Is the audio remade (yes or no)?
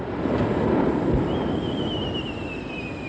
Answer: no